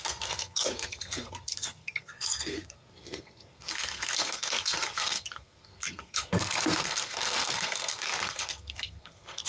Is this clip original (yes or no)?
no